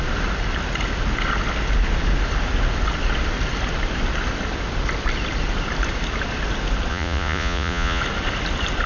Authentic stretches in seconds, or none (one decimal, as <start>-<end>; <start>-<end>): 0.0-6.9; 8.0-8.9